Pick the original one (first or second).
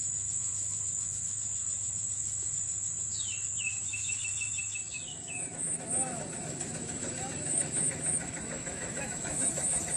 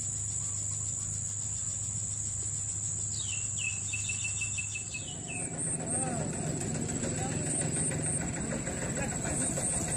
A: second